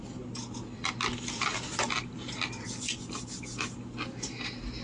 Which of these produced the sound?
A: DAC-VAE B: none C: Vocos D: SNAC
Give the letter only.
B